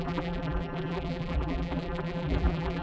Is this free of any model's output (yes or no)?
no